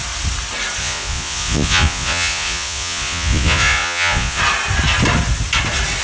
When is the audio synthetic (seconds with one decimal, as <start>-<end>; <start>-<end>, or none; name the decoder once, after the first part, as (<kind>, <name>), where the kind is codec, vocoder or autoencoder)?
0.8-4.4 (vocoder, Vocos)